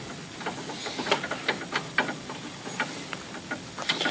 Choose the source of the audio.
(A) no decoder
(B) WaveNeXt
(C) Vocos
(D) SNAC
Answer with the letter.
A